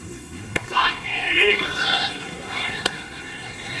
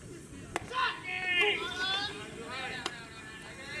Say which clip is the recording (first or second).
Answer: second